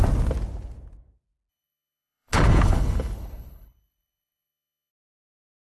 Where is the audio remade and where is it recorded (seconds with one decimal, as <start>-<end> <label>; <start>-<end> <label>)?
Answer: 0.0-1.5 recorded; 1.5-4.9 remade; 4.9-5.7 recorded

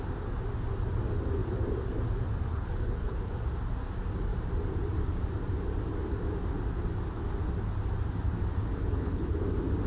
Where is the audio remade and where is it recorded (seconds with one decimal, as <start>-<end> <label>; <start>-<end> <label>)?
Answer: 0.0-2.5 recorded; 2.5-3.3 remade; 3.3-8.7 recorded; 8.7-9.4 remade; 9.4-9.9 recorded

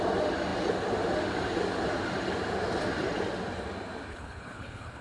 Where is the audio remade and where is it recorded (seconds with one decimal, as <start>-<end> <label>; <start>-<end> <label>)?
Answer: 0.0-4.1 recorded; 4.1-5.0 remade

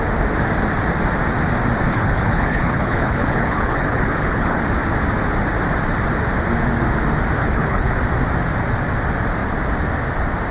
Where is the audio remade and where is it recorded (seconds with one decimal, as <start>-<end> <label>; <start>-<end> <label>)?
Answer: 0.0-1.9 recorded; 1.9-4.6 remade; 4.6-7.4 recorded; 7.4-8.0 remade; 8.0-10.5 recorded

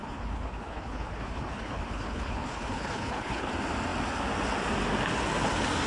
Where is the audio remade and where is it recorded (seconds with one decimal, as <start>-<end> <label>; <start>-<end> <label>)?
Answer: 0.0-3.5 remade; 3.5-5.9 recorded

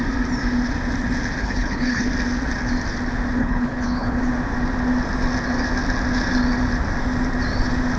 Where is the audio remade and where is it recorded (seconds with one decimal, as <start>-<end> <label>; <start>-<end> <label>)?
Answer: 0.0-1.4 recorded; 1.4-2.1 remade; 2.1-3.4 recorded; 3.4-4.2 remade; 4.2-8.0 recorded